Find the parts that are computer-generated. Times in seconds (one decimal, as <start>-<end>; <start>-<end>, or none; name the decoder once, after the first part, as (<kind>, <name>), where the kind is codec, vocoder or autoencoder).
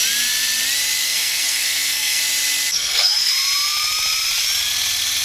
1.0-2.2 (codec, SNAC); 2.7-3.3